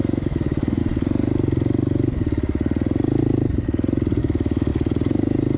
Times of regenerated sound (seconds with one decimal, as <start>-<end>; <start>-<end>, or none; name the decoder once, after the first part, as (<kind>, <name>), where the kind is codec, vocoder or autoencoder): 0.0-0.8 (autoencoder, DAC-VAE); 4.2-4.7